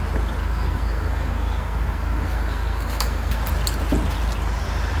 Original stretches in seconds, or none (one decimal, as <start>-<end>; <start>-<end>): 0.0-0.4; 3.4-5.0